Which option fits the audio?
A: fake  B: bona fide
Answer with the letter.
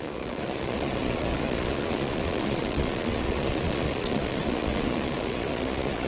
A